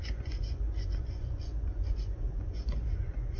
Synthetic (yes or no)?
yes